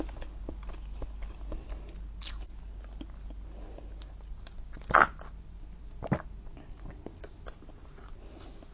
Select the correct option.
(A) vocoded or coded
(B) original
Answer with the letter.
B